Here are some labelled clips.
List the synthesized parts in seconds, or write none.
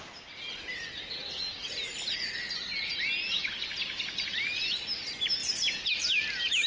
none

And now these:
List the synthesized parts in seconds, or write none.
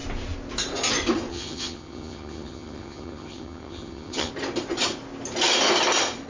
1.3-4.3 (vocoder, HiFi-GAN)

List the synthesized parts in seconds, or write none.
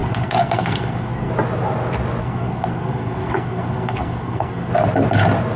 0.0-1.3 (codec, SNAC); 2.2-4.7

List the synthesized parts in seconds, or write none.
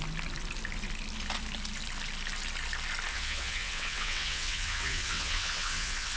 3.1-6.2 (vocoder, WaveNeXt)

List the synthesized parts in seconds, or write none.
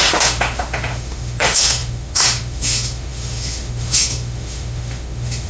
0.0-5.5 (autoencoder, DAC-VAE)